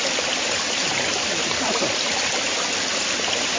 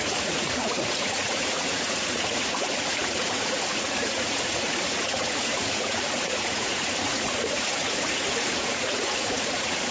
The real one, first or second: first